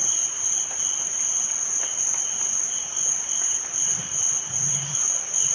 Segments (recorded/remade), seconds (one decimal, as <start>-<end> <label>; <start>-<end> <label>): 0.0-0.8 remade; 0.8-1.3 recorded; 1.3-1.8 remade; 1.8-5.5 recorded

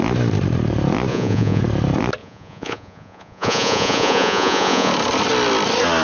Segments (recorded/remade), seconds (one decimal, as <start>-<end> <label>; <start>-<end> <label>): 0.0-1.1 recorded; 1.1-1.6 remade; 1.6-2.2 recorded; 2.2-4.9 remade; 4.9-6.0 recorded

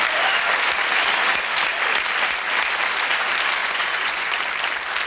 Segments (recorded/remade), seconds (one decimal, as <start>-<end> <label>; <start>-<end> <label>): 0.0-3.6 recorded; 3.6-4.3 remade; 4.3-5.1 recorded

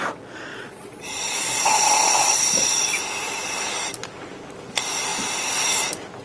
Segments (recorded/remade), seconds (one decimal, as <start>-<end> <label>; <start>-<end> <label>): 0.0-0.5 recorded; 0.5-3.0 remade; 3.0-6.2 recorded

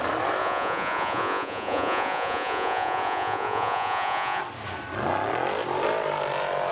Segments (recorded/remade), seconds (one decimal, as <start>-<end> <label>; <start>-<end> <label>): 0.0-0.4 recorded; 0.4-4.4 remade; 4.4-6.7 recorded